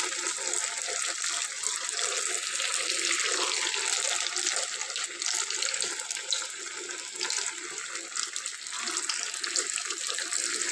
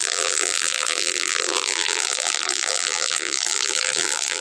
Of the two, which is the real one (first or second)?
first